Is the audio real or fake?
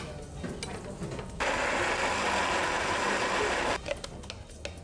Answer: real